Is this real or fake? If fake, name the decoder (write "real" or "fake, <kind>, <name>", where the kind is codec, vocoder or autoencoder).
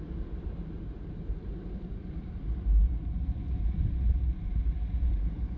fake, vocoder, BigVGAN v2